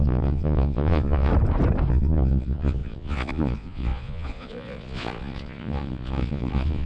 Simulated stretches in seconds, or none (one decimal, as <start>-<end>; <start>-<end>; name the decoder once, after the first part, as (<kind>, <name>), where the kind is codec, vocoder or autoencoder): 0.0-1.3 (vocoder, Vocos); 1.9-6.9